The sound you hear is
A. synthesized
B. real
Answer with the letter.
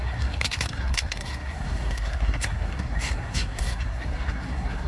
A